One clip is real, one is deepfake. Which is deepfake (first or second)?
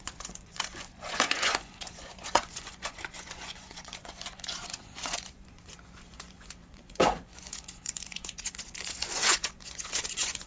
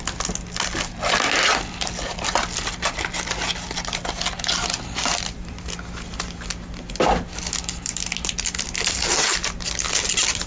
first